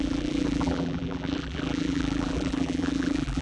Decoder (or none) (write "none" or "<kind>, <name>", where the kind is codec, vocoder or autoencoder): vocoder, BigVGAN v2